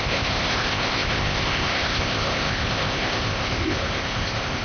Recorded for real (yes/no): no